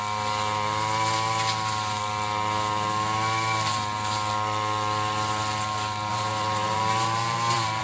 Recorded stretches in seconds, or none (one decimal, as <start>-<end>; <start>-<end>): 0.0-6.1